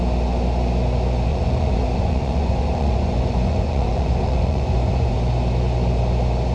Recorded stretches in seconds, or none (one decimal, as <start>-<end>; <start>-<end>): 0.0-1.3; 5.2-6.5